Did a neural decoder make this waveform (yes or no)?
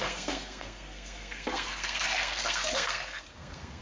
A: yes